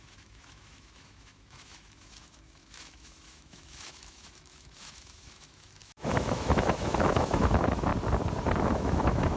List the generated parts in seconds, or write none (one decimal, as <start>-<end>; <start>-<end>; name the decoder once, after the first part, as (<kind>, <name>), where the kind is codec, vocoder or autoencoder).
0.0-7.9 (autoencoder, DAC-VAE); 8.6-9.4